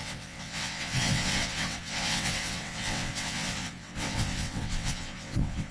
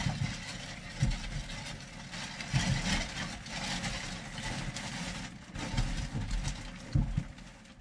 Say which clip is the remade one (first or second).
first